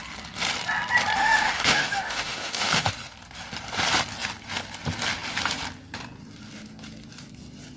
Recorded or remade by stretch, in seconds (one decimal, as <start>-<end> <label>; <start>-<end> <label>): 0.0-1.2 recorded; 1.2-2.9 remade; 2.9-7.8 recorded